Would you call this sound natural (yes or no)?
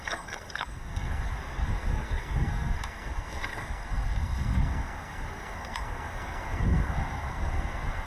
no